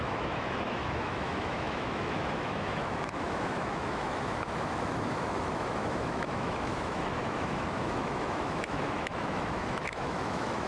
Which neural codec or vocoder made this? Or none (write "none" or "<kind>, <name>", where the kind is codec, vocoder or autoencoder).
autoencoder, DAC-VAE